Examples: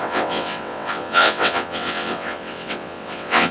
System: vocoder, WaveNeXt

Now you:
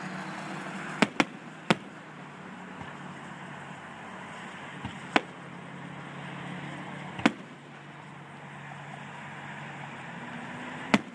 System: none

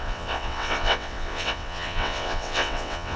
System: vocoder, WaveNeXt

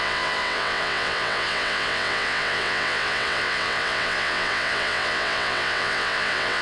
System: vocoder, WaveNeXt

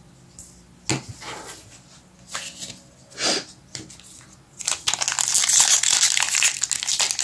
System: none